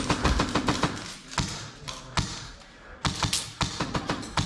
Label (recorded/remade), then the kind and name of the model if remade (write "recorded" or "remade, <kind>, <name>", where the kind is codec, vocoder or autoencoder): recorded